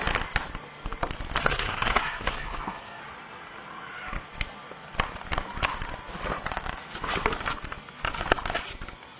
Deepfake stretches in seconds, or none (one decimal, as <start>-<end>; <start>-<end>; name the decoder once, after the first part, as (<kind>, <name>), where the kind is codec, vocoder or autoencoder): 1.4-3.0 (codec, SNAC)